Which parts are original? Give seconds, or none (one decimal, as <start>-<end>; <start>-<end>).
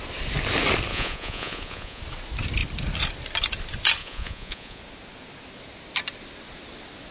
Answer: 0.0-0.9; 2.0-4.0; 4.8-7.1